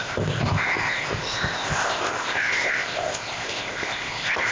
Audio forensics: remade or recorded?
remade